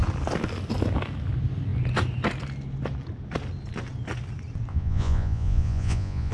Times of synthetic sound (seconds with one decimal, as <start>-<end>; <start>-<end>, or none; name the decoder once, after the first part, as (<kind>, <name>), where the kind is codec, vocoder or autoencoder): 4.7-6.3 (vocoder, Vocos)